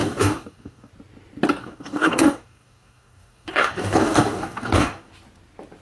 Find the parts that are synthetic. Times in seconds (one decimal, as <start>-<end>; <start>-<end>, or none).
0.0-0.9; 1.6-5.1